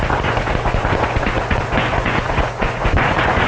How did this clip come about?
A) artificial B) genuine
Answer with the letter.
A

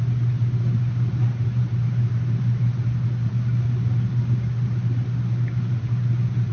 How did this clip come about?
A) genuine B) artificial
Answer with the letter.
A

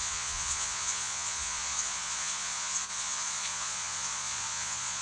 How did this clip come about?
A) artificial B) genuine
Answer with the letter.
A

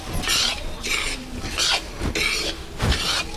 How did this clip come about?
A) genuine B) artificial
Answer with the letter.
A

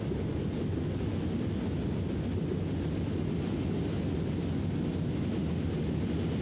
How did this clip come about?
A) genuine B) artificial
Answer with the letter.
A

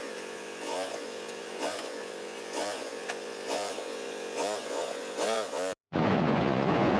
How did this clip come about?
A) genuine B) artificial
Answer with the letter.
B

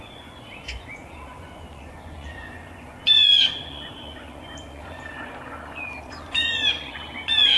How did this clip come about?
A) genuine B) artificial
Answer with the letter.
B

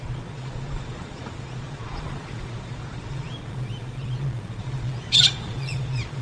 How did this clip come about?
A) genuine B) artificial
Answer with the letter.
B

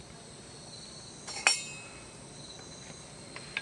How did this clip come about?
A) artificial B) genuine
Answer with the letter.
B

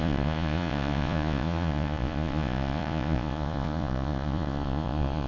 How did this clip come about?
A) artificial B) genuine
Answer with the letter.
A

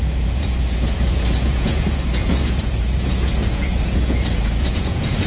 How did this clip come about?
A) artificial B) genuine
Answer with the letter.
A